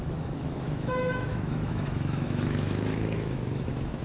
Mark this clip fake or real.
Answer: fake